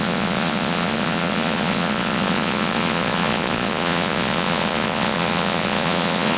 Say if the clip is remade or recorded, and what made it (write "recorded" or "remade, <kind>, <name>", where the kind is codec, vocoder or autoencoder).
remade, vocoder, Vocos